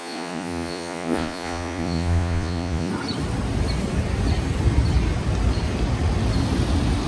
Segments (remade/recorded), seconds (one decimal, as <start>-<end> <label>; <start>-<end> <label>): 0.0-2.9 remade; 2.9-7.1 recorded